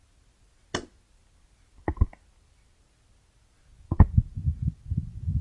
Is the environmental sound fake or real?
real